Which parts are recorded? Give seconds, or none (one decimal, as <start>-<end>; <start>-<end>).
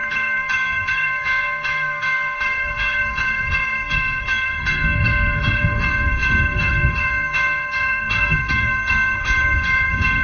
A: none